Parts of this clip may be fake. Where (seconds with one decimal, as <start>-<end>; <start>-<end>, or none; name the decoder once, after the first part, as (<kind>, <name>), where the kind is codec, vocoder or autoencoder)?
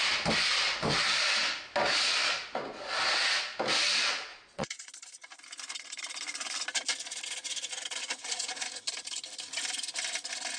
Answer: 4.3-4.9 (vocoder, Vocos); 8.0-8.9